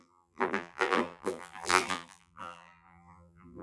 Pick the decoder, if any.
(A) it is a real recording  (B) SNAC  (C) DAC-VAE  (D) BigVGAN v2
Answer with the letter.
D